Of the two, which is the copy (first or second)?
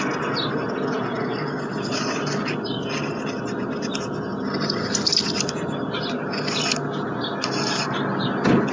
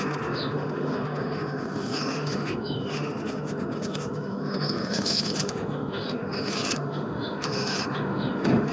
second